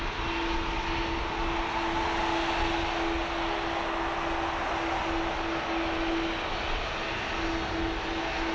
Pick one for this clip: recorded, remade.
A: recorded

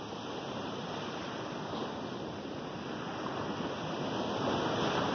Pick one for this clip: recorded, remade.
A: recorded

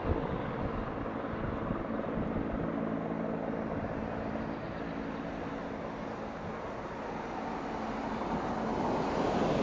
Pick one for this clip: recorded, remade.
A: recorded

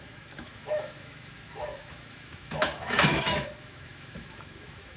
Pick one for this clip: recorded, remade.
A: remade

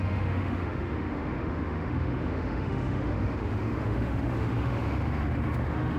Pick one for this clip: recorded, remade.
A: remade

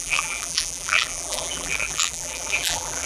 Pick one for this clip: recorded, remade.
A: remade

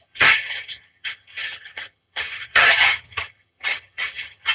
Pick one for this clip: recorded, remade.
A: remade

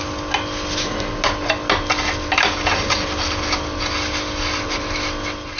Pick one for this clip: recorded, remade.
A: recorded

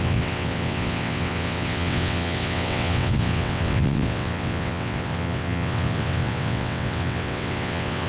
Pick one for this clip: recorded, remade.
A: remade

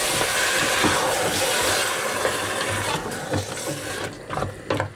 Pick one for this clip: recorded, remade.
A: recorded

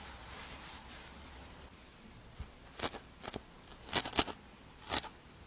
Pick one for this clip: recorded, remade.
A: recorded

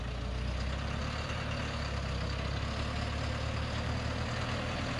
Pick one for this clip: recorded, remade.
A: recorded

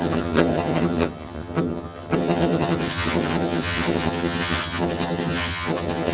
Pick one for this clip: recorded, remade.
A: remade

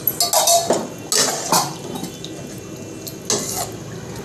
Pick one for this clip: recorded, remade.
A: recorded